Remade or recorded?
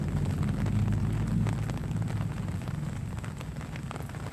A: recorded